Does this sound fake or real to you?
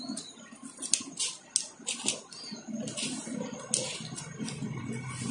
real